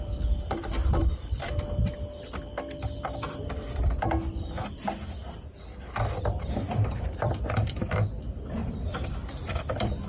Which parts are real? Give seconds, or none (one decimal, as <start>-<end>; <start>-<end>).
1.8-5.9; 8.6-9.5